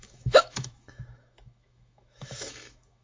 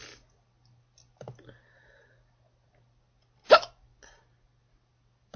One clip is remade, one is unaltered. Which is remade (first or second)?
first